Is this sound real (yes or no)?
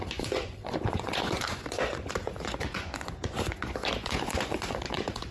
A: no